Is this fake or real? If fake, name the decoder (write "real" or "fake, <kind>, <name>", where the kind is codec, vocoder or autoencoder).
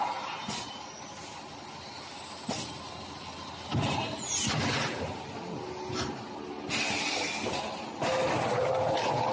real